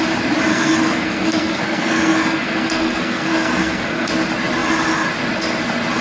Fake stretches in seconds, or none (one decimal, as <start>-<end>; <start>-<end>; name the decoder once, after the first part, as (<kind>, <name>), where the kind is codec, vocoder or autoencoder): 0.5-4.1 (codec, SNAC)